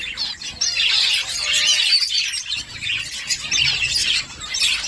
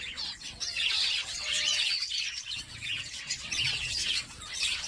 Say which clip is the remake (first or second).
second